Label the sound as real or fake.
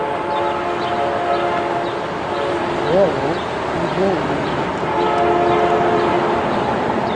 real